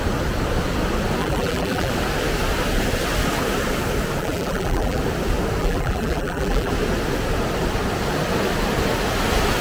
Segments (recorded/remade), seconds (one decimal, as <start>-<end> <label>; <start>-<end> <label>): 0.0-1.2 recorded; 1.2-1.9 remade; 1.9-4.2 recorded; 4.2-5.0 remade; 5.0-5.6 recorded; 5.6-6.7 remade; 6.7-9.6 recorded